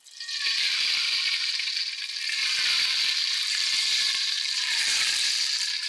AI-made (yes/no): yes